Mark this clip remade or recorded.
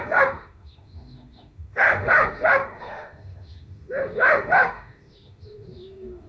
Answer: remade